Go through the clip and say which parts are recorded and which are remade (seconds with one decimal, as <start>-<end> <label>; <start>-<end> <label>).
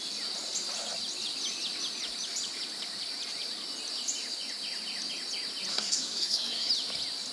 0.0-5.7 recorded; 5.7-6.7 remade; 6.7-7.3 recorded